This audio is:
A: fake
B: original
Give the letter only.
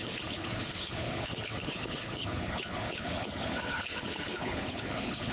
A